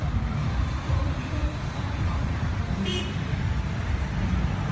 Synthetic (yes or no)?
yes